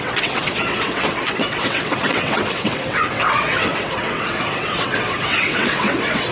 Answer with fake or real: fake